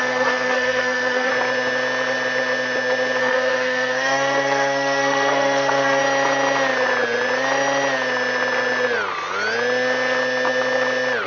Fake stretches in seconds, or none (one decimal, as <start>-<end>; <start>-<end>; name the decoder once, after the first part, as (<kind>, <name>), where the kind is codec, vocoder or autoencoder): 0.0-1.3 (codec, SNAC); 3.2-6.0